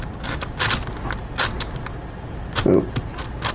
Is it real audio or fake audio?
real